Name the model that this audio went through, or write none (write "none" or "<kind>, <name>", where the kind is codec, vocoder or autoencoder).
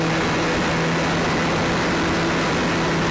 none